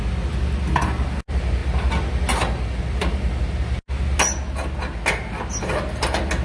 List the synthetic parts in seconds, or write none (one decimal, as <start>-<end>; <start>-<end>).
none